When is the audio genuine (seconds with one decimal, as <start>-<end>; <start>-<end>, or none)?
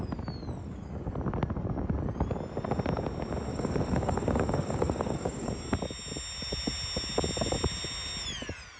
0.0-0.6; 1.1-3.5; 5.5-8.8